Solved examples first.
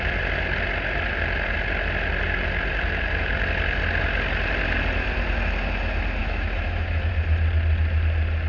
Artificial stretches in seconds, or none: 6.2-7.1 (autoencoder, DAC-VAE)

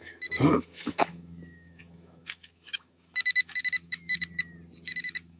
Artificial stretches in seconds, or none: 0.0-4.2 (autoencoder, DAC-VAE); 4.9-5.4

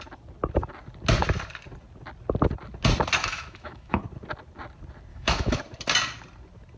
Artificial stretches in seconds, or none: 3.2-4.0 (autoencoder, DAC-VAE); 5.1-5.6

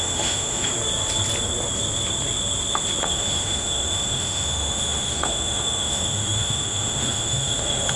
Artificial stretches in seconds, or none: 0.0-0.7 (autoencoder, DAC-VAE); 3.0-8.0